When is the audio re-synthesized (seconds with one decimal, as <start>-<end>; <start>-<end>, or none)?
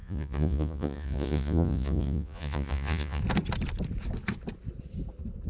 0.0-3.2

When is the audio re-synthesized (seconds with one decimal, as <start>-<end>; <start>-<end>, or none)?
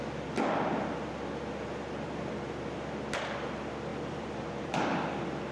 3.9-5.5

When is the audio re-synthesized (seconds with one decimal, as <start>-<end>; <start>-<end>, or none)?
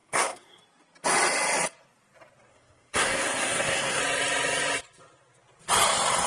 0.0-0.6; 2.5-4.0